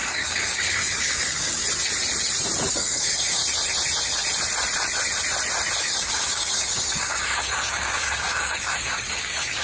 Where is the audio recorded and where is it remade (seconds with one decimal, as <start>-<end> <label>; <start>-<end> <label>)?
0.0-1.6 remade; 1.6-2.7 recorded; 2.7-3.4 remade; 3.4-5.8 recorded; 5.8-9.6 remade